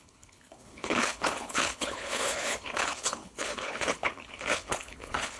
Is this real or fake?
fake